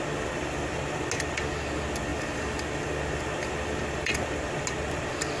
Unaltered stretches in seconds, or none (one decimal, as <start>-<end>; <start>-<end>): 0.0-5.4